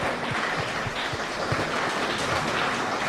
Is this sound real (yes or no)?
yes